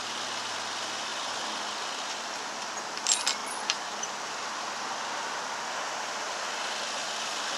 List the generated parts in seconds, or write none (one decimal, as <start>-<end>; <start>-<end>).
3.4-5.0